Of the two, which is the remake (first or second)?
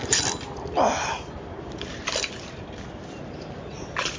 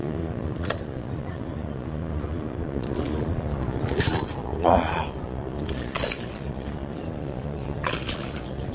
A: second